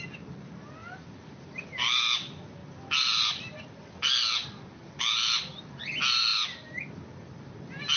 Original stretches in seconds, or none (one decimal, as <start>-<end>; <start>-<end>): 0.0-0.8; 1.3-8.0